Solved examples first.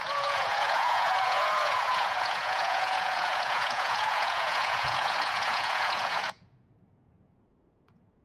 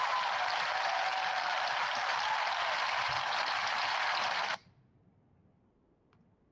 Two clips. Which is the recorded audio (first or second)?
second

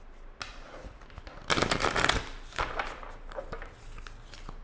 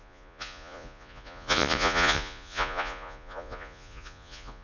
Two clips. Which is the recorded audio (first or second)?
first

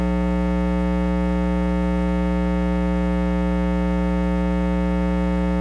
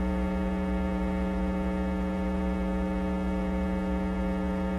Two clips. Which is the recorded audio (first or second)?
first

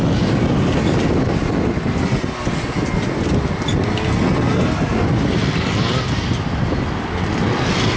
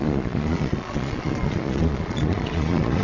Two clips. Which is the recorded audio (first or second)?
first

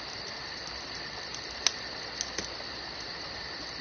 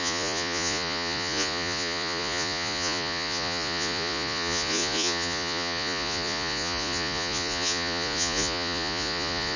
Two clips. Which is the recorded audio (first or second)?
first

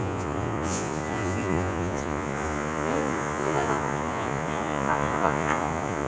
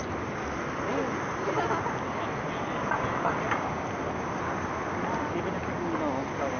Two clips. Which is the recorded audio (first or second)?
second